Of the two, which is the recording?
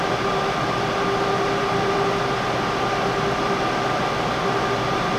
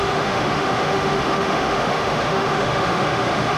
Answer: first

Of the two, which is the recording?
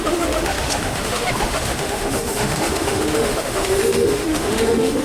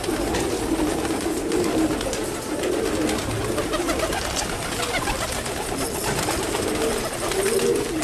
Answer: second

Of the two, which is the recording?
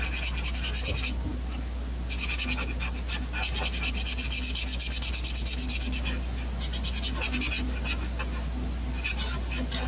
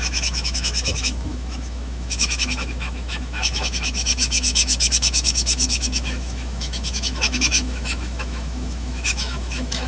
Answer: first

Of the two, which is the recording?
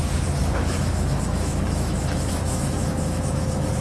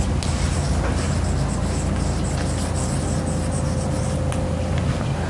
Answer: second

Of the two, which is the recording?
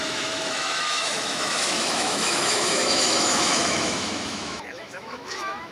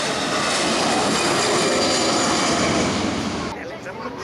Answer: second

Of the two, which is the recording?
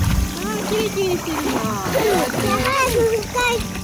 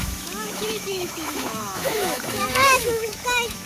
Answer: first